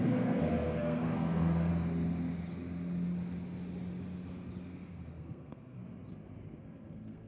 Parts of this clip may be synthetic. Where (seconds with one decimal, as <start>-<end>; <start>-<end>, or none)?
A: 0.0-1.7; 4.7-5.8; 6.6-7.3